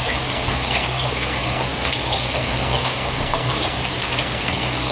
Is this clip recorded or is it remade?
remade